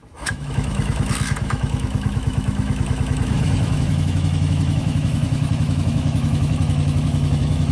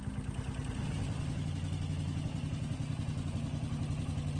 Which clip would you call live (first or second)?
second